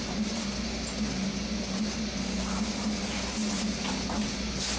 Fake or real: real